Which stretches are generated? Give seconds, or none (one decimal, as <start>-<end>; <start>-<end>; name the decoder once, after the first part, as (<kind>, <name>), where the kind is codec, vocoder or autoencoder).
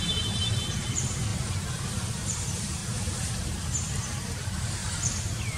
0.0-5.6 (vocoder, BigVGAN v2)